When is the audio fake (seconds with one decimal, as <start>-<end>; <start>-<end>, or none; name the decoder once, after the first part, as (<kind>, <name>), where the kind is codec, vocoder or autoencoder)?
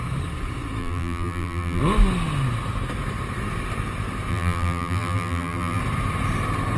0.8-1.8 (vocoder, BigVGAN v2); 4.3-5.8